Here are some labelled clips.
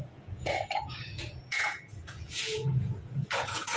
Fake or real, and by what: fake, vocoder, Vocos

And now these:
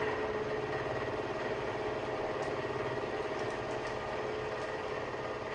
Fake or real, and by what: real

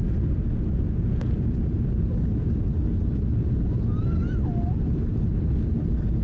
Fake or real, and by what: real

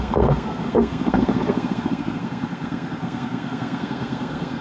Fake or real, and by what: fake, codec, SNAC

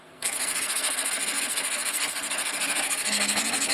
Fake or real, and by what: fake, codec, SNAC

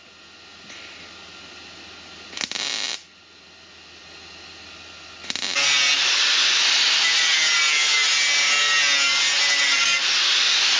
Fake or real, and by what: real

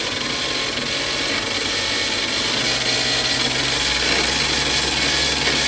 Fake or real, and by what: real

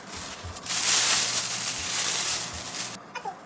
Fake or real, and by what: real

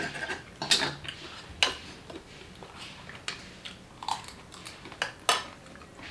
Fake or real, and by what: real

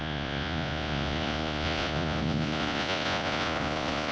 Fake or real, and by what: fake, vocoder, Vocos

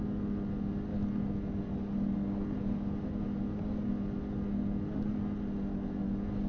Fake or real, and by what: real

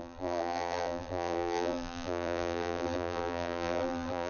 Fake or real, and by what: fake, vocoder, BigVGAN v2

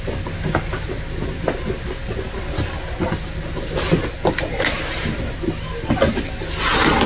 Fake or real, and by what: real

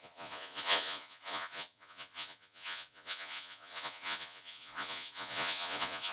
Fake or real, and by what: fake, vocoder, Vocos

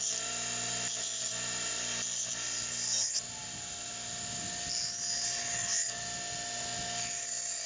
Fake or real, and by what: real